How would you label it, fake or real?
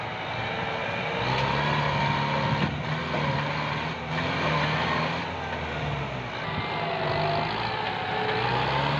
real